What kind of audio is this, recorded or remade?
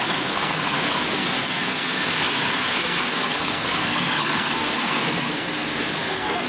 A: remade